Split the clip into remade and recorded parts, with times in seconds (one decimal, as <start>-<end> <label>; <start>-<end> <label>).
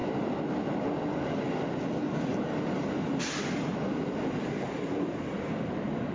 0.0-6.1 recorded